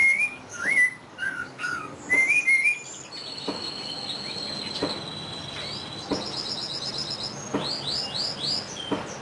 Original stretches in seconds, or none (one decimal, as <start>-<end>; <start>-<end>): 2.0-9.2